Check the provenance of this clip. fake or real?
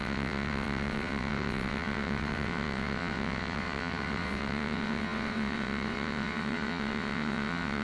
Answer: fake